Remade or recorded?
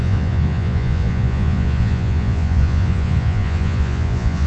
remade